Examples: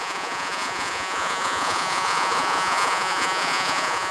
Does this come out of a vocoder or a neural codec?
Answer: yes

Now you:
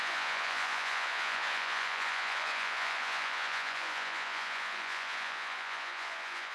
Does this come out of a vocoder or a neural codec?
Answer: yes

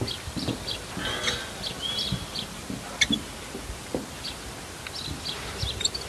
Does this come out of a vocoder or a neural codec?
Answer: no